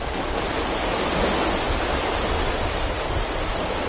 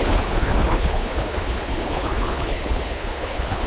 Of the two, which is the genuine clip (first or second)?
first